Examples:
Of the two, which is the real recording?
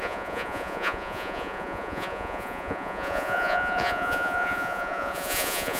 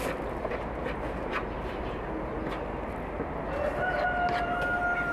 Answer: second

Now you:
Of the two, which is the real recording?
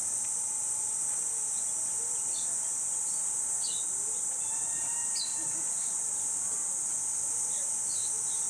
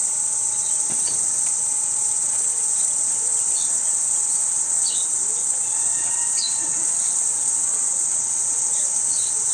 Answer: first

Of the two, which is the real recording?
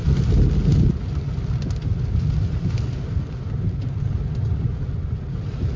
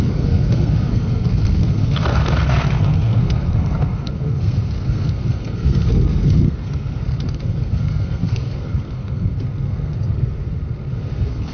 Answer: first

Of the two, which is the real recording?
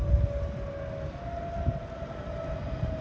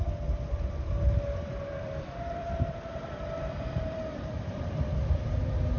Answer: first